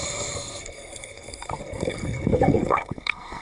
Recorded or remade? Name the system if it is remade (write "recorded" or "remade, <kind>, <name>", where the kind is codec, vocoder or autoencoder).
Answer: remade, codec, SNAC